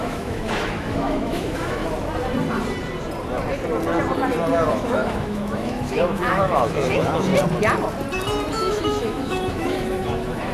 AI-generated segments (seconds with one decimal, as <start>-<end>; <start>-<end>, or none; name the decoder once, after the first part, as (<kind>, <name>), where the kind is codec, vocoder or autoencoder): 0.0-1.8 (autoencoder, DAC-VAE); 4.7-7.3; 8.5-10.5

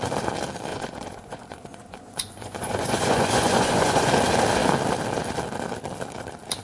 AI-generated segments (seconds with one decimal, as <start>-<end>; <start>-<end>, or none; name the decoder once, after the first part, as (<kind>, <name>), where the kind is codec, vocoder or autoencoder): 0.7-4.1 (vocoder, Vocos)

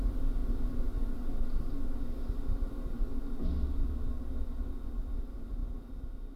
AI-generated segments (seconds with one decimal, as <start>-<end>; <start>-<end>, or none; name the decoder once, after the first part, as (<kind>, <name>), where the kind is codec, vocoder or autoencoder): none